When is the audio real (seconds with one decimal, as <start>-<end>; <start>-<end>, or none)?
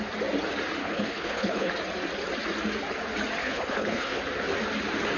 0.0-0.8; 1.7-3.4; 4.2-5.2